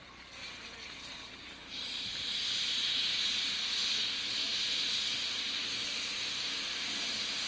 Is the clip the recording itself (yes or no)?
yes